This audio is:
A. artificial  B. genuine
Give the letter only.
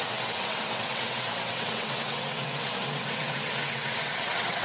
A